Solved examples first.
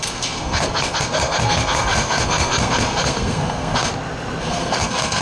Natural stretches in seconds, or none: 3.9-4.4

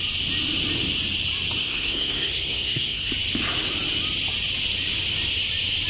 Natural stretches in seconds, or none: 0.0-1.6; 3.1-5.9

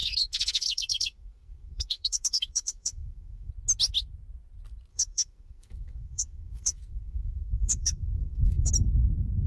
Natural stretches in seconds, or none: 3.5-4.9; 8.7-9.5

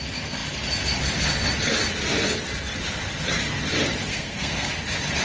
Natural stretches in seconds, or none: 0.0-4.1; 4.7-5.2

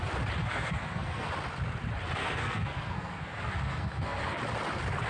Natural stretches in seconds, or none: 0.0-0.4; 1.3-2.2; 4.4-5.1